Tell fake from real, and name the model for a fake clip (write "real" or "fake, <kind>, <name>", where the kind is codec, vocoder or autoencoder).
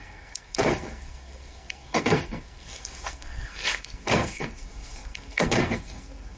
fake, codec, SNAC